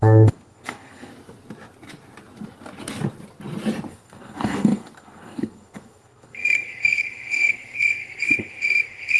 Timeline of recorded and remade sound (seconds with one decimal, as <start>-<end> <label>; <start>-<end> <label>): 0.0-1.1 remade; 1.1-3.9 recorded; 3.9-9.2 remade